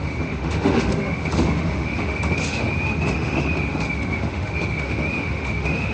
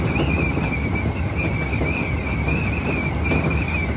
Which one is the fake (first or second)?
first